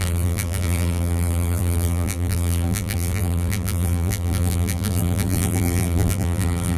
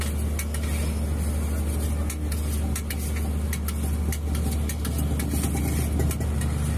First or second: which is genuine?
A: second